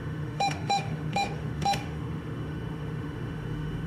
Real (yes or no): no